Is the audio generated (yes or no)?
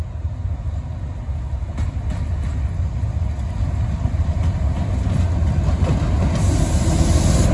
no